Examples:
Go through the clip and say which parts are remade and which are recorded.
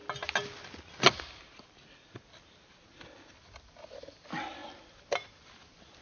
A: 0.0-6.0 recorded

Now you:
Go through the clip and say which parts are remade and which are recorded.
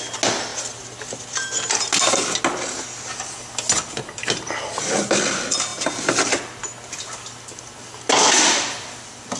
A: 0.0-9.4 recorded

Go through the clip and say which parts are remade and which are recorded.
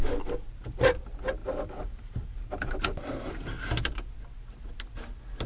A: 0.0-5.5 recorded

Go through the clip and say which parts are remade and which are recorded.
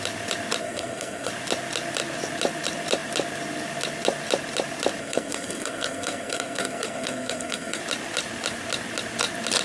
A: 0.0-0.6 recorded; 0.6-1.3 remade; 1.3-5.0 recorded; 5.0-7.8 remade; 7.8-9.6 recorded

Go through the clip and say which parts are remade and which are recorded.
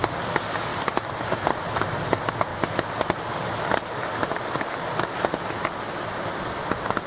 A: 0.0-7.1 recorded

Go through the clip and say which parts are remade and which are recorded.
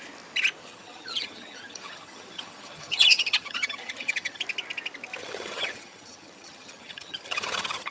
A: 0.0-0.6 recorded; 0.6-4.4 remade; 4.4-5.2 recorded; 5.2-7.9 remade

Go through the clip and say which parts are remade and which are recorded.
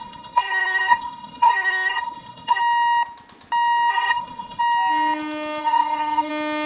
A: 0.0-2.6 remade; 2.6-3.9 recorded; 3.9-4.6 remade; 4.6-5.6 recorded; 5.6-6.3 remade; 6.3-6.7 recorded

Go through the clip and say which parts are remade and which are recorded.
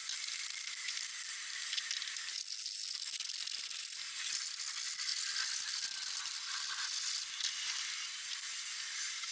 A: 0.0-1.3 remade; 1.3-9.3 recorded